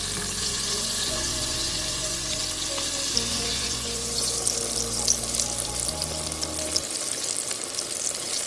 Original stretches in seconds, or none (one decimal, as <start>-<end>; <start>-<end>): 0.0-0.4; 2.4-3.3; 4.3-8.5